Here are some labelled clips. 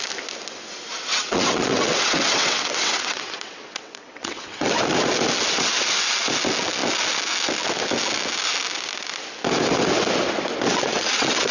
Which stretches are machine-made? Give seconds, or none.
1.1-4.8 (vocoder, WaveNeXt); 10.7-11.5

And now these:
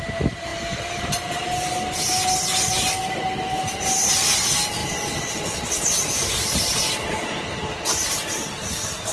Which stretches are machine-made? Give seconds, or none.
none

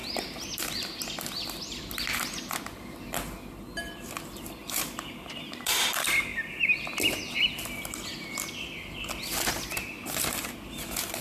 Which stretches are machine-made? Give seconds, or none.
none

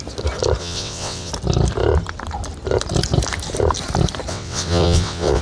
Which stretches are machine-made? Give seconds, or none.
0.6-1.3 (vocoder, WaveNeXt); 4.3-5.4

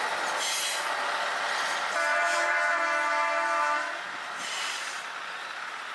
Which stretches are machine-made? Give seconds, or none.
2.1-2.8 (vocoder, Vocos)

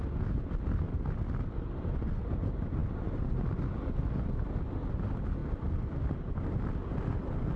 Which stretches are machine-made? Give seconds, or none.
none

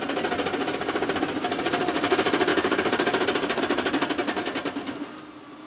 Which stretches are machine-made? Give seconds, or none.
2.5-3.6 (vocoder, BigVGAN v2)

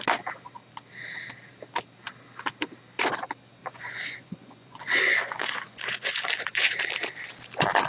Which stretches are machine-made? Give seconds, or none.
3.6-6.8 (vocoder, Vocos)